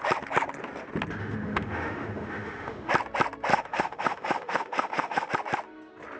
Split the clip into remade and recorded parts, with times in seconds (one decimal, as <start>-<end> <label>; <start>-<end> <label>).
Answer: 0.0-1.2 recorded; 1.2-2.9 remade; 2.9-3.5 recorded; 3.5-5.3 remade; 5.3-6.2 recorded